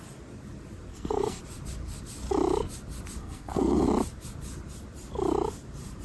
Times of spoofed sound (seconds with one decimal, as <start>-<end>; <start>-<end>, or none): 0.9-1.4; 3.2-3.8